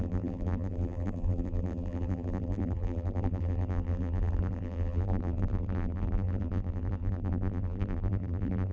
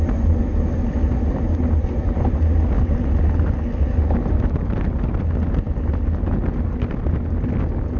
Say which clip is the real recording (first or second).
second